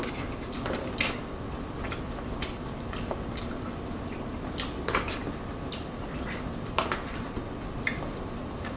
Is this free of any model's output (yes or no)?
yes